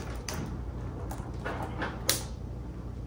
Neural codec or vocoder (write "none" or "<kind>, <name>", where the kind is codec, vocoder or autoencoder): none